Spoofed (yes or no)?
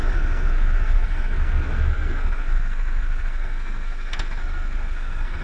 yes